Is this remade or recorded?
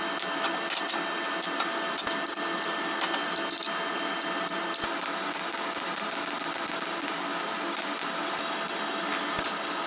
recorded